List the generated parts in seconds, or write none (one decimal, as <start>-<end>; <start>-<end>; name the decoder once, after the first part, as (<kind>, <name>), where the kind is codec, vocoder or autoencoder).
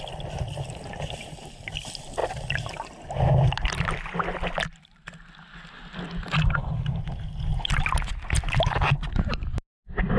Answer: none